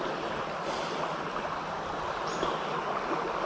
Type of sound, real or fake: real